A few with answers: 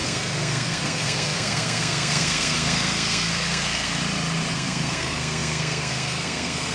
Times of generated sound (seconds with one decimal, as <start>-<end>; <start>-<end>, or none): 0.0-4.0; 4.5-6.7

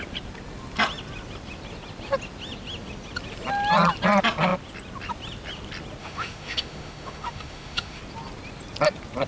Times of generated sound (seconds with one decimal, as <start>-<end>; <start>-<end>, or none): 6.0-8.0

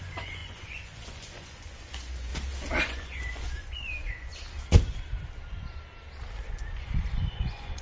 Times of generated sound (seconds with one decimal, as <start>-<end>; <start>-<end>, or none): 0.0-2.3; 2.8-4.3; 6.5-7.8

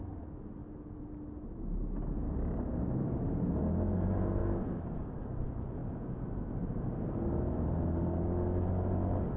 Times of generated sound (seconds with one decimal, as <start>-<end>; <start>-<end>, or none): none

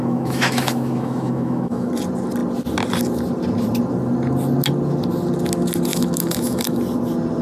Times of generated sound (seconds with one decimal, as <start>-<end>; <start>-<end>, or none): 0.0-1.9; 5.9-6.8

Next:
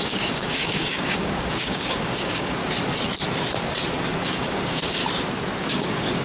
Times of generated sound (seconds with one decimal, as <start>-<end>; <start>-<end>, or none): 0.0-2.6; 4.2-5.0; 5.6-6.2

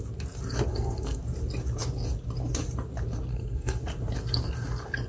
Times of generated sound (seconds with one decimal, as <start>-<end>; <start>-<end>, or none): 0.7-1.2; 3.3-3.8